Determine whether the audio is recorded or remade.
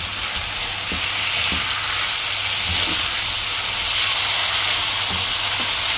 recorded